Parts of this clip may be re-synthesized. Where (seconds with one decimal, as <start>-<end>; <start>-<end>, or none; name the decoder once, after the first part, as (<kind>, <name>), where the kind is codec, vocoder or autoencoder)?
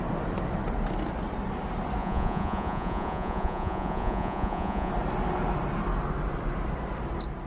2.0-4.9 (vocoder, Vocos)